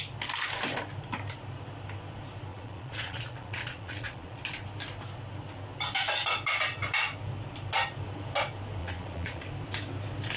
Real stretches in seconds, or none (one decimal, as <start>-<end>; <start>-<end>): 0.0-2.5; 4.4-8.8; 9.4-10.4